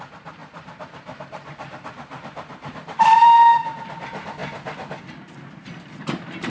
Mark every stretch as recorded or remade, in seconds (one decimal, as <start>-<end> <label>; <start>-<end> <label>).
0.0-0.4 recorded; 0.4-3.9 remade; 3.9-6.5 recorded